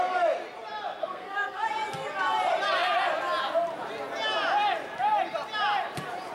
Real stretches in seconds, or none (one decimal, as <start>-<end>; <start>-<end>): 0.0-1.0; 1.7-6.3